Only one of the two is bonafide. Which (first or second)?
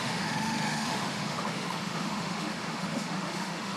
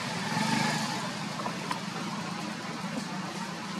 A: second